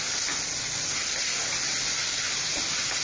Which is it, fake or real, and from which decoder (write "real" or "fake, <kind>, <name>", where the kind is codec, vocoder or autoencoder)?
real